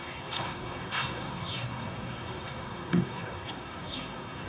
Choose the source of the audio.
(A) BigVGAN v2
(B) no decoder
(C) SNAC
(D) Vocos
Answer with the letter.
C